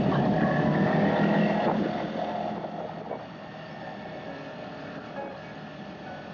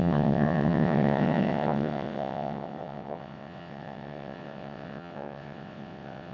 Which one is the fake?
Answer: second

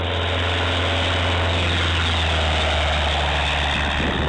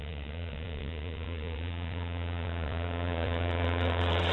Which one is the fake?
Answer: second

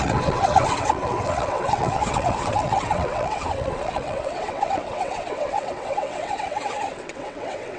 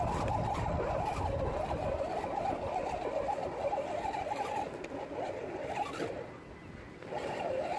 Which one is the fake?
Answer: first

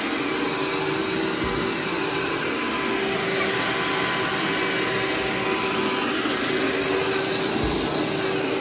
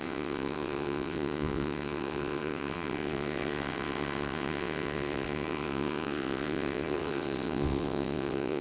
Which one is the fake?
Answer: second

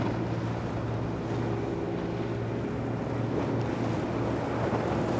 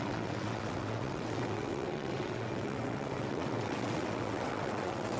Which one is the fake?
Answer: second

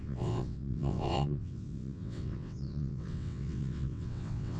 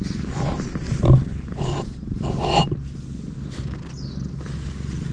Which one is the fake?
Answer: first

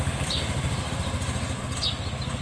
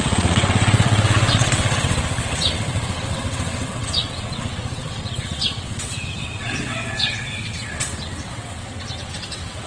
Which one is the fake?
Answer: second